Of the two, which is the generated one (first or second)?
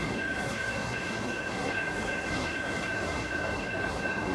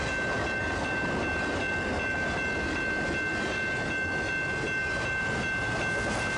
first